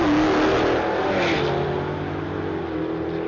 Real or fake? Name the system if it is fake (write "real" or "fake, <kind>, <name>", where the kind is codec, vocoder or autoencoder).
real